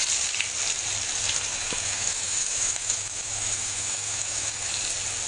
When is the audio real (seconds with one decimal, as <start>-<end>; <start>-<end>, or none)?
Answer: 0.0-1.5; 4.7-5.3